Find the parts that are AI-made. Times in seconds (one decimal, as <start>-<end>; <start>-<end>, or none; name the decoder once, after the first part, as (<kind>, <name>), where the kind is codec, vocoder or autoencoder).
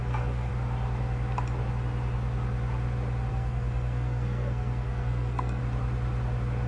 0.0-0.5 (codec, SNAC); 3.3-5.6